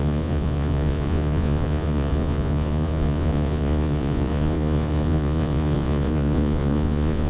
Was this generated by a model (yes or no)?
yes